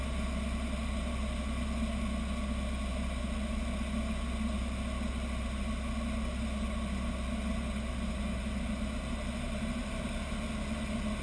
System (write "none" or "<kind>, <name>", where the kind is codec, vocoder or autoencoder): none